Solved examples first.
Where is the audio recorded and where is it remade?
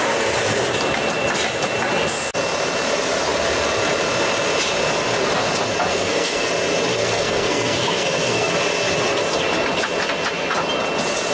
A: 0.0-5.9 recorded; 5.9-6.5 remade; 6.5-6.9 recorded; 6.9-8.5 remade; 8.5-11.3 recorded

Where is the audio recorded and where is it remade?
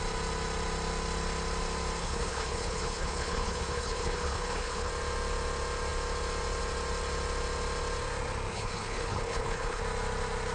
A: 0.0-2.0 recorded; 2.0-4.9 remade; 4.9-8.5 recorded; 8.5-9.8 remade; 9.8-10.5 recorded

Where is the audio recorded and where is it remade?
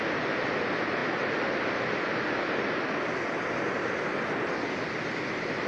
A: 0.0-5.7 recorded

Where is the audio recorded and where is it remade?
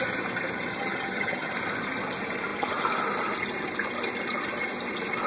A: 0.0-0.7 recorded; 0.7-1.5 remade; 1.5-5.3 recorded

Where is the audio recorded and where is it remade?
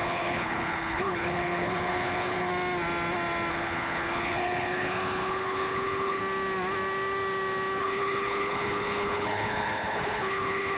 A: 0.0-2.5 remade; 2.5-3.5 recorded; 3.5-6.2 remade; 6.2-7.8 recorded; 7.8-10.8 remade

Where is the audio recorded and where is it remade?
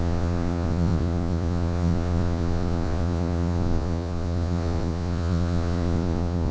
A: 0.0-6.5 remade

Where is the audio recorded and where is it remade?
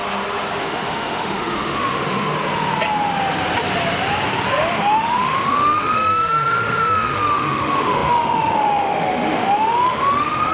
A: 0.0-0.6 recorded; 0.6-2.3 remade; 2.3-4.5 recorded; 4.5-10.5 remade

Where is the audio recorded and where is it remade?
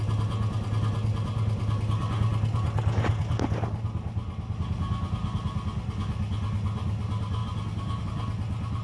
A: 0.0-8.8 recorded